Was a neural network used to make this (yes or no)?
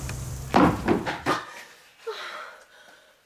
no